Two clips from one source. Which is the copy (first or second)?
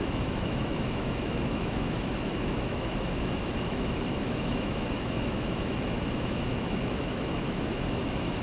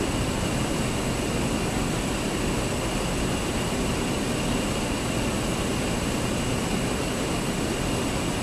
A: first